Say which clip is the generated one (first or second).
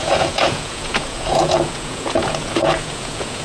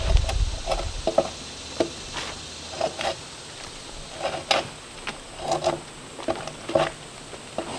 first